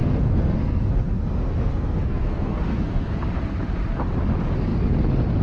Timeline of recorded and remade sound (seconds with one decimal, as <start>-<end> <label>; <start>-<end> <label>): 0.0-3.2 remade; 3.2-5.4 recorded